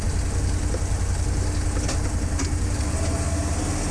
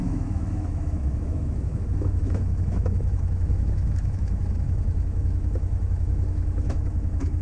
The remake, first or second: second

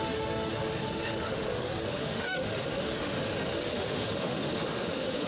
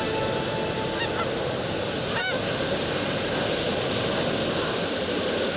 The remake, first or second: first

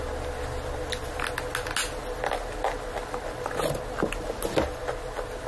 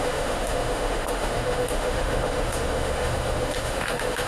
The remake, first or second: second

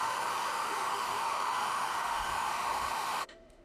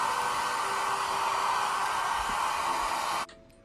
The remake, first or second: first